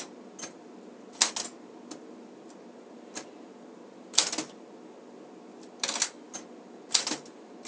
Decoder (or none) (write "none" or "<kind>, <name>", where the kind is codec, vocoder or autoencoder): none